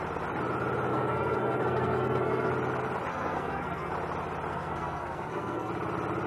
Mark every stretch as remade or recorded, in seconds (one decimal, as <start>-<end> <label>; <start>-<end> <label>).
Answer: 0.0-0.9 recorded; 0.9-2.5 remade; 2.5-3.1 recorded; 3.1-3.9 remade; 3.9-4.5 recorded; 4.5-5.7 remade; 5.7-6.3 recorded